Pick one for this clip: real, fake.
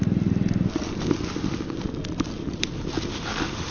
real